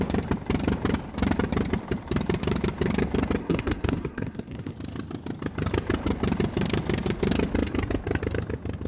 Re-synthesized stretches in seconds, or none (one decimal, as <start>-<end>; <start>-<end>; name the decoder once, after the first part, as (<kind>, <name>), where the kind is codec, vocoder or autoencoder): 3.4-4.7 (codec, SNAC)